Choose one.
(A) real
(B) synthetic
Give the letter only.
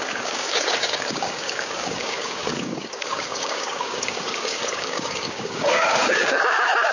B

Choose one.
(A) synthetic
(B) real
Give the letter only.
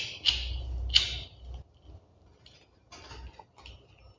B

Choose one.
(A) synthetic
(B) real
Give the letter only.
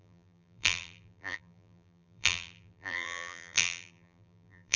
A